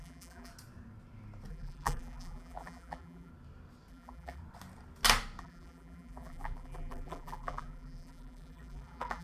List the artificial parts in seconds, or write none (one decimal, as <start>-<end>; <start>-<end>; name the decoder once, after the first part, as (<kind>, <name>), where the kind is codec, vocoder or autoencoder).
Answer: 0.0-0.5 (vocoder, BigVGAN v2); 1.5-3.3; 3.9-4.4; 5.4-9.2